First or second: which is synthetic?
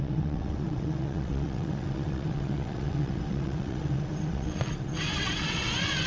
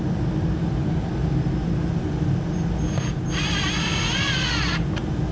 first